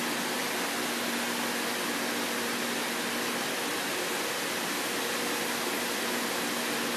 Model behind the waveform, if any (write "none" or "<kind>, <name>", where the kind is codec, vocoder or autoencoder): none